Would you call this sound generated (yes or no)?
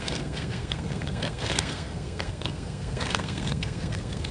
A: yes